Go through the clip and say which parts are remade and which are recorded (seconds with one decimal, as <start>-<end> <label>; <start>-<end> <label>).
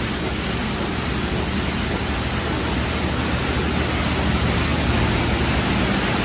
0.0-6.2 recorded